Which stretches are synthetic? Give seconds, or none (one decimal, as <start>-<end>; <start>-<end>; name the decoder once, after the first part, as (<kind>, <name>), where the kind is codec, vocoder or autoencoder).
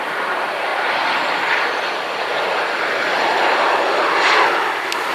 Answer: none